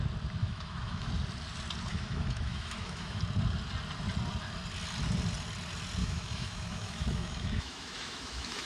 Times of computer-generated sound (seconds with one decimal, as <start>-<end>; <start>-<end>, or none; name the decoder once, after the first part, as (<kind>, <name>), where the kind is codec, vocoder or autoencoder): 0.4-1.1 (autoencoder, DAC-VAE); 1.9-3.2; 6.0-8.7